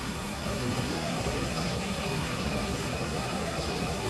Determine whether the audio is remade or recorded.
remade